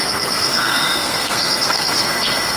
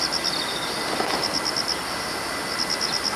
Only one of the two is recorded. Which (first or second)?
second